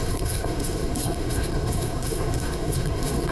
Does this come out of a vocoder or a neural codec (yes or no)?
yes